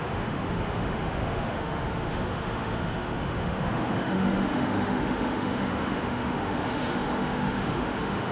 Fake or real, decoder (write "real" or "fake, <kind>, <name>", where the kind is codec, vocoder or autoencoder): fake, autoencoder, DAC-VAE